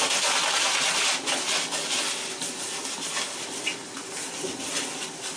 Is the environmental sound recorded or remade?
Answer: recorded